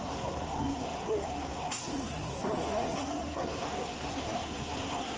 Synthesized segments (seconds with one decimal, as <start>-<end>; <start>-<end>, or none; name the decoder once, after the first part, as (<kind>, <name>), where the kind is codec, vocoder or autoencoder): 0.0-5.2 (codec, SNAC)